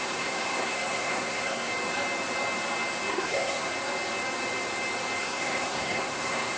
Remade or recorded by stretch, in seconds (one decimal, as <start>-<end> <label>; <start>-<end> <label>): 0.0-1.7 remade; 1.7-3.1 recorded; 3.1-3.7 remade; 3.7-5.2 recorded; 5.2-6.6 remade